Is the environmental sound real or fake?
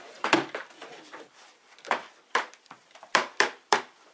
fake